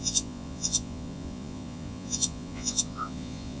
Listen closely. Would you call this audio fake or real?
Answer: fake